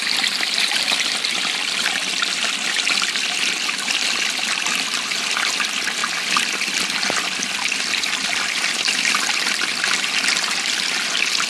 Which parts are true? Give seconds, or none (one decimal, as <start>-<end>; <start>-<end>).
0.0-11.5